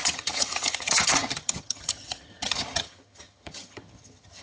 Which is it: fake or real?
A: fake